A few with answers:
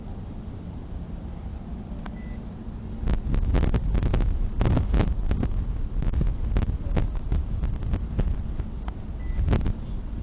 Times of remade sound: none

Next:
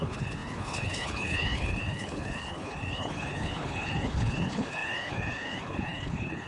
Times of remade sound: 0.0-6.5 (codec, HILCodec)

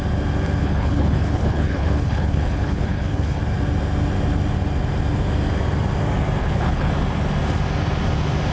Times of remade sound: 0.6-3.4 (codec, HILCodec); 6.4-6.9

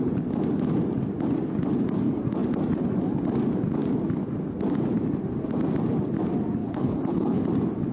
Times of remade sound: 6.6-7.4 (codec, HILCodec)